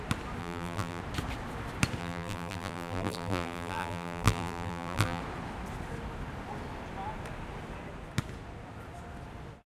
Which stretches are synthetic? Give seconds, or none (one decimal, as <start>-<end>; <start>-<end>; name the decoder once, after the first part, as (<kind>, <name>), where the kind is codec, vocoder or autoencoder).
0.4-1.0 (vocoder, BigVGAN v2); 2.0-5.2